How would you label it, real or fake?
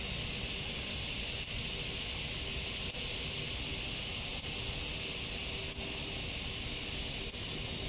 real